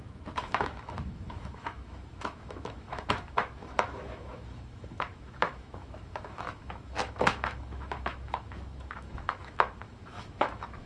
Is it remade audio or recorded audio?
remade